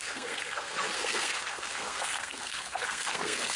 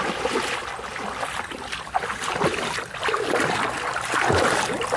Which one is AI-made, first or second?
first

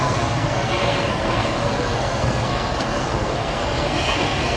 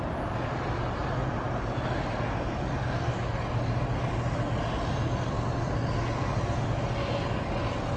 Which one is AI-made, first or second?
first